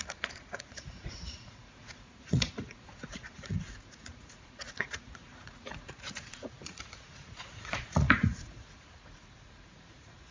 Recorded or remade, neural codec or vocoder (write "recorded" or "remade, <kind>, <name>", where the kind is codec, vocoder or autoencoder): remade, vocoder, Vocos